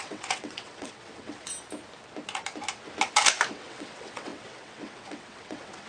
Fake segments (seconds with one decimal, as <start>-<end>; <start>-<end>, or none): 0.0-1.5; 3.5-5.9